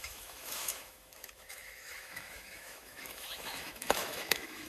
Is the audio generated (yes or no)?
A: yes